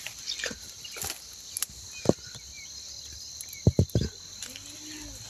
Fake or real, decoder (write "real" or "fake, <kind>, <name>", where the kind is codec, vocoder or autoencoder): real